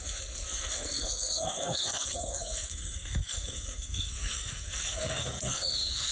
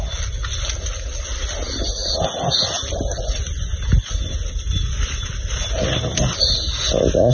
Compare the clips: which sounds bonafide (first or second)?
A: second